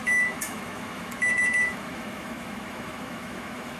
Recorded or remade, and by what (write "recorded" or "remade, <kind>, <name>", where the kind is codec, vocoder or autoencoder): remade, autoencoder, DAC-VAE